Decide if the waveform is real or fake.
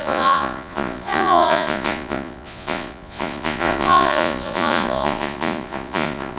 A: fake